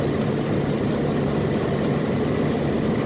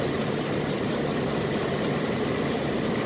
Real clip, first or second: first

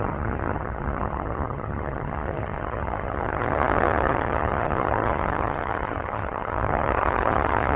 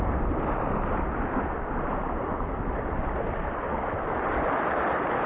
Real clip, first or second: second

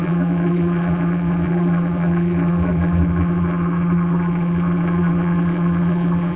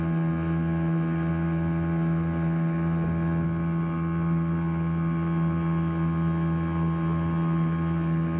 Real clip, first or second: second